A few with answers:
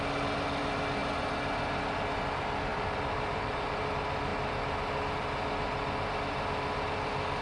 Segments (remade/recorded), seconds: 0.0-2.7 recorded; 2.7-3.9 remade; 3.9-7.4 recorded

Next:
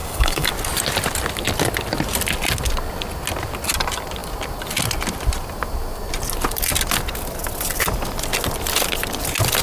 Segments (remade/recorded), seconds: 0.0-0.5 remade; 0.5-9.6 recorded

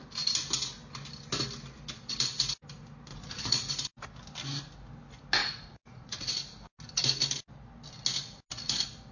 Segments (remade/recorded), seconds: 0.0-3.1 recorded; 3.1-3.7 remade; 3.7-5.4 recorded; 5.4-6.3 remade; 6.3-9.1 recorded

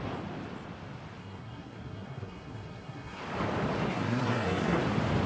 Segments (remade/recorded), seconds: 0.0-1.2 recorded; 1.2-3.2 remade; 3.2-3.9 recorded; 3.9-4.8 remade; 4.8-5.3 recorded

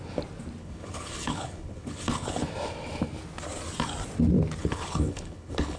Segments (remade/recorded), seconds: 0.0-0.6 recorded; 0.6-2.5 remade; 2.5-4.6 recorded; 4.6-5.8 remade

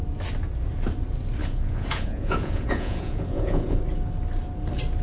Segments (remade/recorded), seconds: 0.0-1.4 recorded; 1.4-3.8 remade; 3.8-5.0 recorded

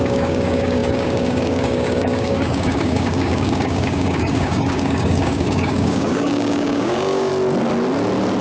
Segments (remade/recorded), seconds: 0.0-7.3 remade; 7.3-8.4 recorded